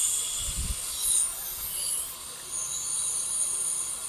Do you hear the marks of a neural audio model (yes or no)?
no